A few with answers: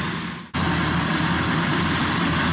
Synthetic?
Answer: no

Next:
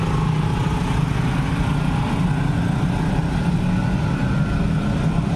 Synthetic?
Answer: no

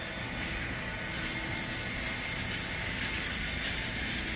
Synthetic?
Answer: no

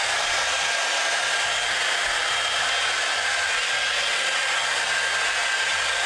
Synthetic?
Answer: no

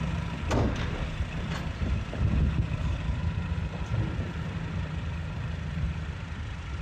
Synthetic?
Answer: yes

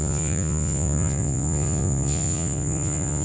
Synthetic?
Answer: yes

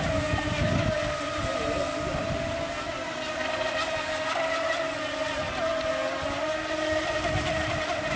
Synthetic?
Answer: no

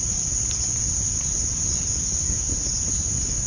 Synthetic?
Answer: no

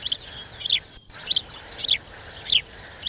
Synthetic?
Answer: no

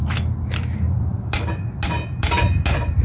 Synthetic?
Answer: no